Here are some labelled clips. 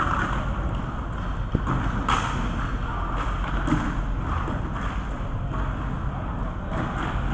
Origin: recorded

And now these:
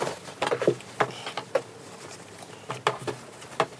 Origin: recorded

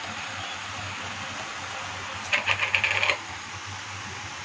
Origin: recorded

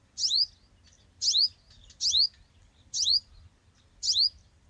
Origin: recorded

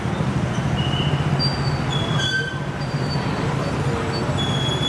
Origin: recorded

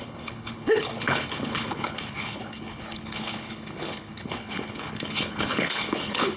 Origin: remade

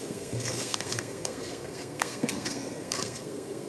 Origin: remade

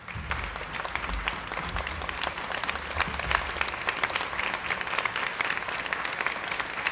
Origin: recorded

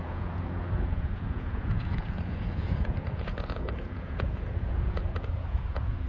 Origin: remade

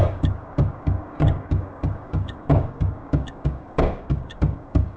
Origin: remade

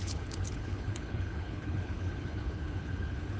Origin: remade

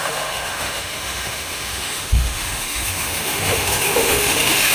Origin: remade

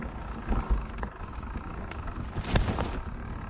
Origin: recorded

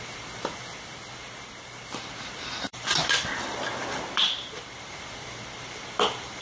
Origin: remade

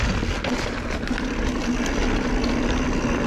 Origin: recorded